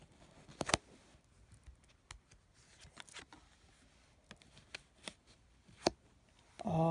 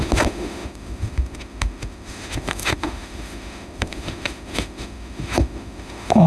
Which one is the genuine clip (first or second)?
first